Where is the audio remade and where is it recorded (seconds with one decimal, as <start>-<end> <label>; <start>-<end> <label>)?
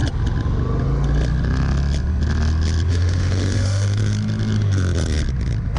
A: 0.0-2.9 recorded; 2.9-4.0 remade; 4.0-5.8 recorded